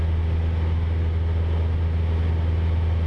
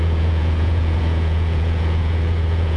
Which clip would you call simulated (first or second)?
second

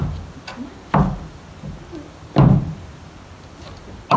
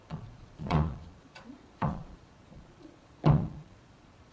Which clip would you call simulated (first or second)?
second